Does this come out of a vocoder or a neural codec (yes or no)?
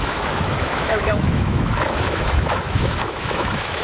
yes